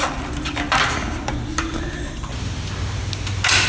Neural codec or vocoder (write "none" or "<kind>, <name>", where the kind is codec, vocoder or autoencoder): none